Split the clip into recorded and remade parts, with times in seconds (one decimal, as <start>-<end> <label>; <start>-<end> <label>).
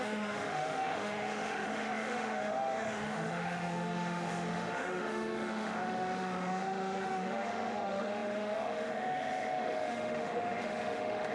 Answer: 0.0-11.3 remade